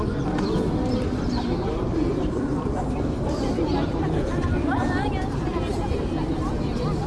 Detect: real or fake real